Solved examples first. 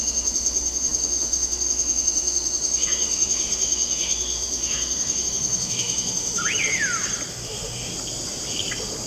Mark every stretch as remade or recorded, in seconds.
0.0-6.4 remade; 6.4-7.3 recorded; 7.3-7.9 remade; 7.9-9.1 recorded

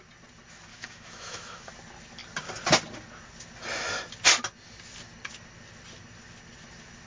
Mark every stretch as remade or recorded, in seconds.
0.0-0.7 recorded; 0.7-1.7 remade; 1.7-7.1 recorded

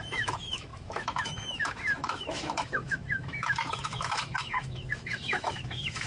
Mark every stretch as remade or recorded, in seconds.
0.0-6.1 remade

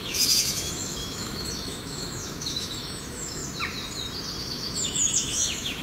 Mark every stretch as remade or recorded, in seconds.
0.0-3.4 remade; 3.4-4.4 recorded; 4.4-5.8 remade

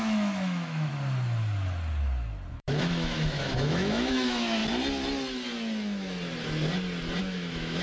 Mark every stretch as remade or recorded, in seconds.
0.0-0.9 remade; 0.9-2.5 recorded; 2.5-4.6 remade; 4.6-7.2 recorded; 7.2-7.8 remade

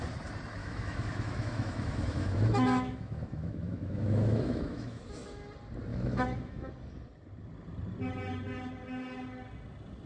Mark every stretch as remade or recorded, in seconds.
0.0-0.6 recorded; 0.6-5.0 remade; 5.0-5.9 recorded; 5.9-6.7 remade; 6.7-10.1 recorded

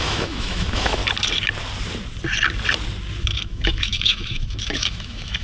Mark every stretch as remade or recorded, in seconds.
0.0-1.0 remade; 1.0-3.2 recorded; 3.2-5.4 remade

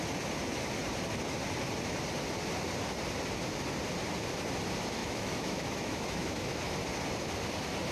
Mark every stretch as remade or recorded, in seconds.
0.0-5.0 recorded; 5.0-6.6 remade; 6.6-7.9 recorded